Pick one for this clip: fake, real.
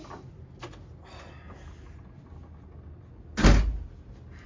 real